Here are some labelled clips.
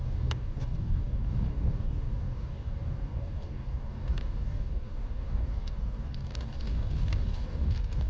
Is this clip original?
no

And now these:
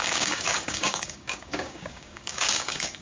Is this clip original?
no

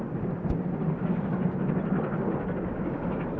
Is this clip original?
yes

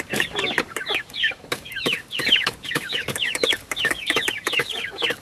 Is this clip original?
no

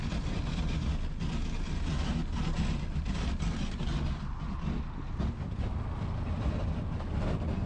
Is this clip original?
yes